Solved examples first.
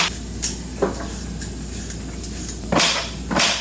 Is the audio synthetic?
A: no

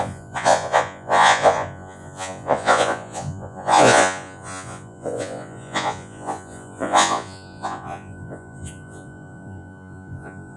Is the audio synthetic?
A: yes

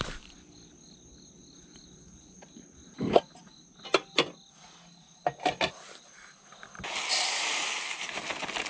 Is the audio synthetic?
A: no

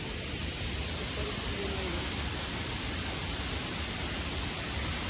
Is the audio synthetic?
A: no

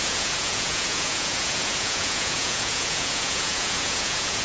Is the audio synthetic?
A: yes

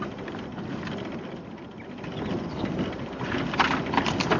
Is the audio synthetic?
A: no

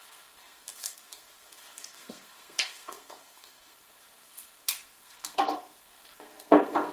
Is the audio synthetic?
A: yes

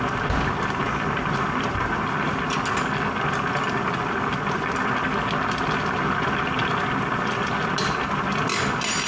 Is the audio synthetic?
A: no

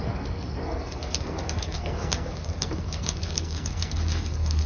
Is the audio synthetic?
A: yes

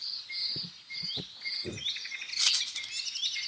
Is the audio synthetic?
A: no